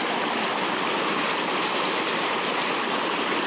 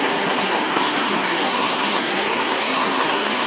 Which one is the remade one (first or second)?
second